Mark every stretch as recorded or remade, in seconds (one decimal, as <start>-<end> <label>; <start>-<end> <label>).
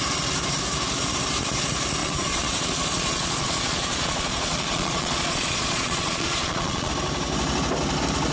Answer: 0.0-2.0 recorded; 2.0-6.9 remade; 6.9-8.3 recorded